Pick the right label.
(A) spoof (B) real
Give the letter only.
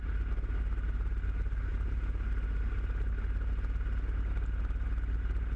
B